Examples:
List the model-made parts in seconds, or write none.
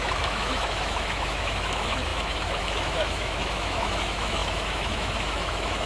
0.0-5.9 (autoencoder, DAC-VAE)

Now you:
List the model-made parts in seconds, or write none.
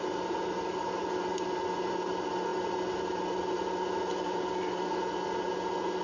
none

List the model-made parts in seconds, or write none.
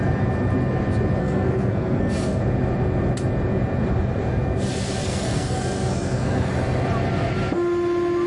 1.2-2.4 (codec, SNAC); 5.0-6.5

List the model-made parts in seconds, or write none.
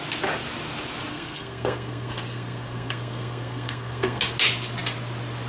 1.1-4.2 (codec, SNAC)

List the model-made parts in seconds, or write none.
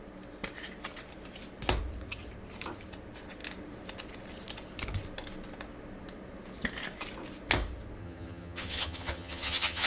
8.0-9.9 (vocoder, HiFi-GAN)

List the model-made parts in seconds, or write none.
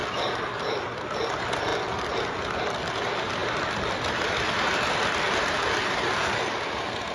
none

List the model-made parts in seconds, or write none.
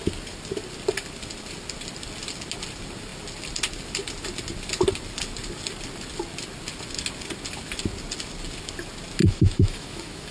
9.2-10.3 (autoencoder, DAC-VAE)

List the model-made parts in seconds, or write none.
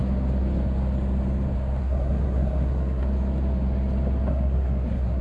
1.8-3.0 (codec, SNAC); 4.3-5.2